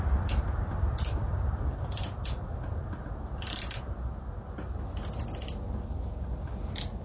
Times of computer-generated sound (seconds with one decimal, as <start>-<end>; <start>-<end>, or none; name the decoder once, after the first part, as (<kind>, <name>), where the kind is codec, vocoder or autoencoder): 1.3-3.6 (vocoder, BigVGAN v2)